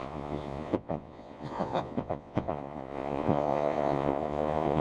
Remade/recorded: remade